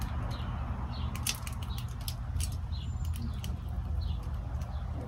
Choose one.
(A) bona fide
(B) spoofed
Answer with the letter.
A